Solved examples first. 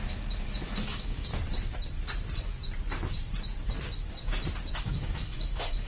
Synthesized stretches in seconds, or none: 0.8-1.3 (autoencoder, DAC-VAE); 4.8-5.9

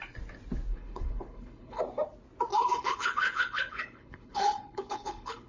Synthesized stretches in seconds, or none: 0.7-1.8 (codec, HILCodec); 2.5-5.5

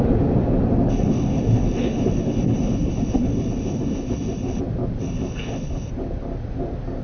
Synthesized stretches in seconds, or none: 0.9-4.6 (codec, HILCodec); 5.0-5.9

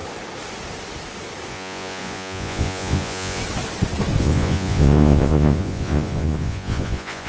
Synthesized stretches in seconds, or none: 1.5-3.4 (vocoder, Vocos); 4.2-7.3

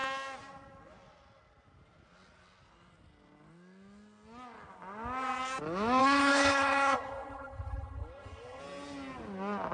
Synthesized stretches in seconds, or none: 6.0-8.6 (codec, HILCodec)

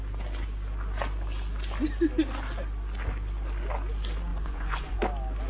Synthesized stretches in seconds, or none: 4.3-5.0 (vocoder, Vocos)

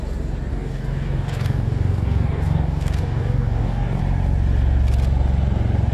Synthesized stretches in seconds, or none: 0.5-4.0 (codec, DAC)

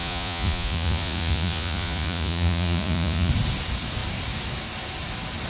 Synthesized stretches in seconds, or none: 0.0-3.3 (vocoder, Vocos)